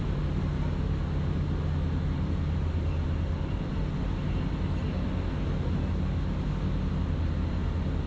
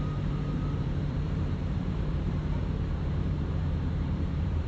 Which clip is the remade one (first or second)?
second